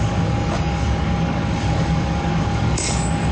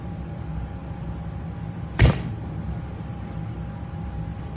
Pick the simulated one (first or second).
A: first